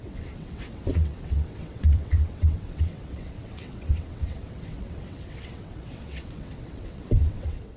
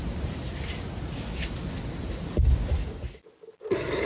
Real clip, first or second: second